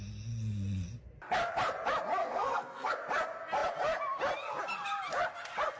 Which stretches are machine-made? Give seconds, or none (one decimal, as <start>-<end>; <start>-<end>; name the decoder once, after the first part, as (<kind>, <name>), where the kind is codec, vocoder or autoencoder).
2.2-2.9 (codec, SNAC)